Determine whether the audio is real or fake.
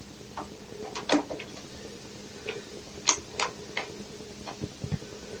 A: real